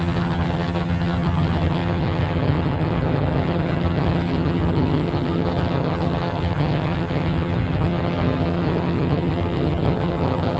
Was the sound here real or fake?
fake